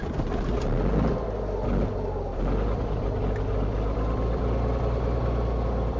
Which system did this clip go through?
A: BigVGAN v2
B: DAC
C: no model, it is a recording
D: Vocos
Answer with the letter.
C